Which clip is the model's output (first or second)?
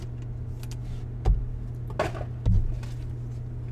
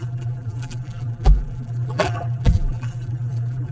second